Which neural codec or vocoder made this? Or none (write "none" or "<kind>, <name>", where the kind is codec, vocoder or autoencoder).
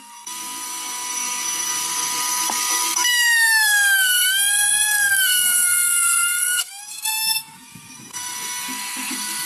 codec, SNAC